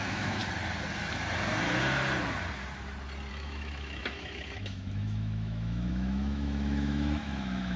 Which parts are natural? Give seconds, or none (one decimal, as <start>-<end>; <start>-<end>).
0.4-3.3